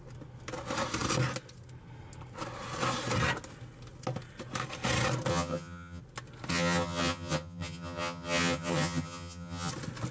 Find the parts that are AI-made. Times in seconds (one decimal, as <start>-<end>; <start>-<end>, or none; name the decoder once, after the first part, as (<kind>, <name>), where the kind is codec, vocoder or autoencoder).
5.3-6.0 (vocoder, HiFi-GAN); 6.5-9.7